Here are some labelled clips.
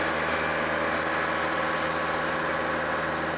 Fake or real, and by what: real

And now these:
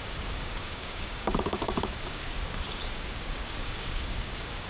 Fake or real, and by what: fake, codec, DAC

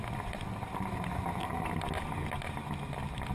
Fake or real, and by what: real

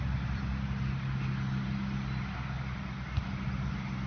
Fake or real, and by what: real